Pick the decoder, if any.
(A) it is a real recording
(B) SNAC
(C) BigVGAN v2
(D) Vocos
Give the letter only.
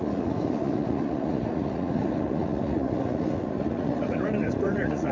D